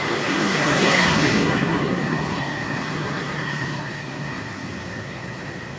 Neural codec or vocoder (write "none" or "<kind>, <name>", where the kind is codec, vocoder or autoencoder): codec, SNAC